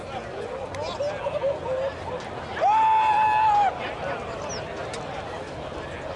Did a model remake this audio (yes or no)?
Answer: no